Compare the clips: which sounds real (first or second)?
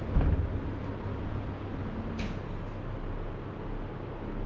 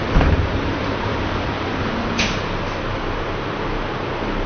first